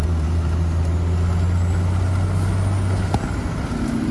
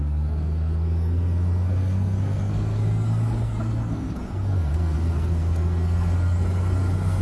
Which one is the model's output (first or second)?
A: second